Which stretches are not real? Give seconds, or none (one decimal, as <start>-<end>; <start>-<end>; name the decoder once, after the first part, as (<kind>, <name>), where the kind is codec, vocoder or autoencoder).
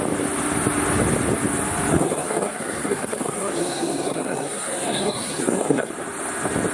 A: 1.9-5.9 (codec, SNAC)